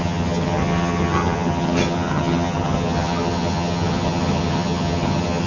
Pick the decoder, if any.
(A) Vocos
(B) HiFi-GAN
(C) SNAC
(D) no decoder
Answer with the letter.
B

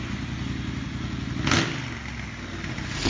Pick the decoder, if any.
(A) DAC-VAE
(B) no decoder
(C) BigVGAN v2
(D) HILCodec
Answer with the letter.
B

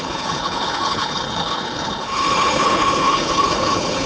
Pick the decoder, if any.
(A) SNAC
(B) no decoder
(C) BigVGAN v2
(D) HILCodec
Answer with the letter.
D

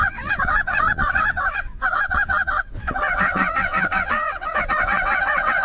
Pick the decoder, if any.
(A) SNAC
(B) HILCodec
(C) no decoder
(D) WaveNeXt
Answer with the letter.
D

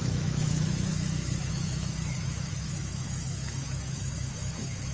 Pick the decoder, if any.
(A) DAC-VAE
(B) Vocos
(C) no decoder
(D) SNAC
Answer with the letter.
A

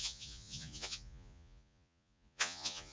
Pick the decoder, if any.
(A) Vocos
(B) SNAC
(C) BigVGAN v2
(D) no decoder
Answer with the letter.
A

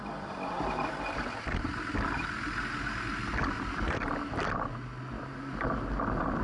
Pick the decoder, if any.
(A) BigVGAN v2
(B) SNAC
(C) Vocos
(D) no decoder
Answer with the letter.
D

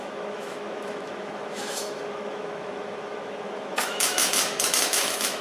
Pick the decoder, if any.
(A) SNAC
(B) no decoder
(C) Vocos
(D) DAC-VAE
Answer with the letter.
D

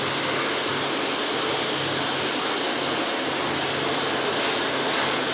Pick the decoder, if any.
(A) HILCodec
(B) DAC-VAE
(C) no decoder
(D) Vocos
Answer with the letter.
C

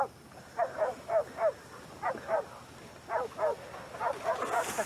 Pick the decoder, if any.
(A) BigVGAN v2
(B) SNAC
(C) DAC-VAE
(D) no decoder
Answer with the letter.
D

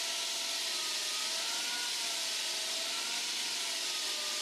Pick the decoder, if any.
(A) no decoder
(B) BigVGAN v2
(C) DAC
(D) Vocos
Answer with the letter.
A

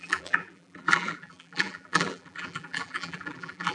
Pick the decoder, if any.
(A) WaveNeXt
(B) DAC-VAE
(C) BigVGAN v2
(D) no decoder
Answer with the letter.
C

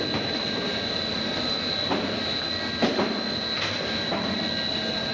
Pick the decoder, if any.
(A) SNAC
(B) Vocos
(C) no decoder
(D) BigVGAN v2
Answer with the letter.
C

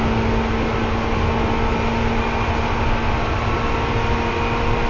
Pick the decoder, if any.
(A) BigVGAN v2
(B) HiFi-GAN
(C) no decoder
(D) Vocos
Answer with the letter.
C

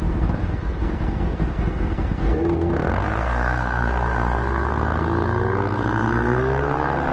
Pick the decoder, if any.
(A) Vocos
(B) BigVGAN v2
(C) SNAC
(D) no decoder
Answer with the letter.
C